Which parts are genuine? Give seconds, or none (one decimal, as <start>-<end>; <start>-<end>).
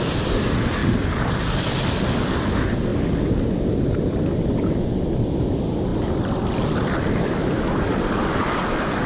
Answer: 0.0-9.1